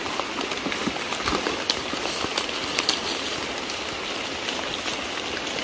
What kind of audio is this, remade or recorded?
recorded